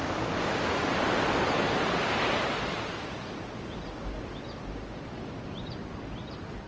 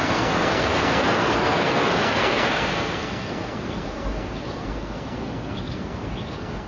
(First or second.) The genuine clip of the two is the first